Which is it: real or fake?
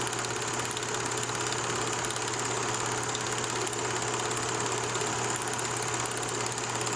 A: real